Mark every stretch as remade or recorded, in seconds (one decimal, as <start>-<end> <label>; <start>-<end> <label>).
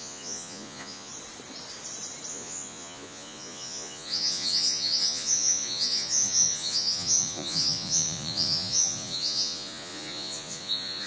0.0-1.1 remade; 1.1-2.3 recorded; 2.3-11.1 remade